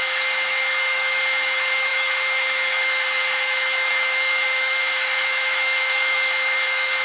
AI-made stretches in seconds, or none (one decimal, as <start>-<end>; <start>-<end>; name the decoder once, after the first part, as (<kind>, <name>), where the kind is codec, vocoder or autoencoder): 0.0-7.0 (autoencoder, DAC-VAE)